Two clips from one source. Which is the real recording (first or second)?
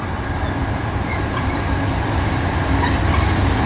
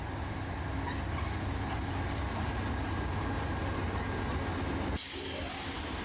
second